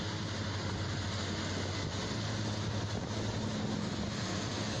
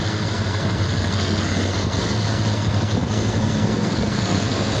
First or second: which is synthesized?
second